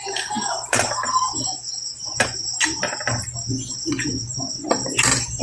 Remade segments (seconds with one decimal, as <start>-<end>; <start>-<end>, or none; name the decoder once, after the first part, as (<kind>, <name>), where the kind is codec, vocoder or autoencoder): 0.0-5.4 (vocoder, BigVGAN v2)